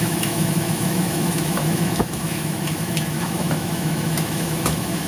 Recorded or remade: remade